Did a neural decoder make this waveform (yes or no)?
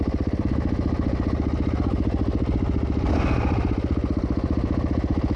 no